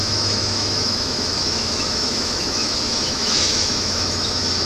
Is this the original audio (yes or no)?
no